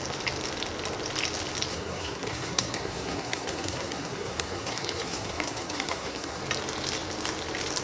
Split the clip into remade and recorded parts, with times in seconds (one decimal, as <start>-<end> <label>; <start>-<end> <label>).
0.0-1.7 recorded; 1.7-6.4 remade; 6.4-7.8 recorded